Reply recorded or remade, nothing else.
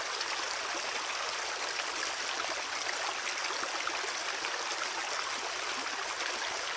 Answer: recorded